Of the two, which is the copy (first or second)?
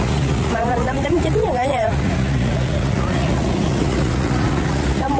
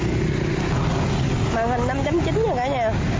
first